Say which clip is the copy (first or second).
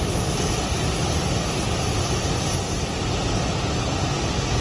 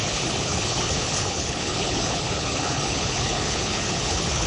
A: second